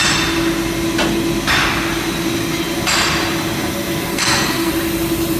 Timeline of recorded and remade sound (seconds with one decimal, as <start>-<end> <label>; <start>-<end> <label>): 0.0-4.1 recorded; 4.1-4.7 remade; 4.7-5.4 recorded